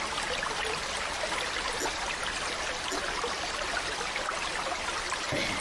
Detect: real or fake real